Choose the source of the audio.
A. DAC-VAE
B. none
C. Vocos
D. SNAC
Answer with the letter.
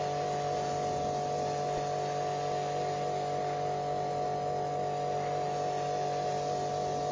B